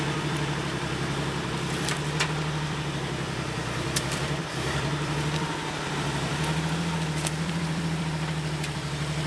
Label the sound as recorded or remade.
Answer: remade